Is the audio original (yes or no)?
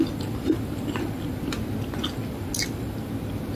yes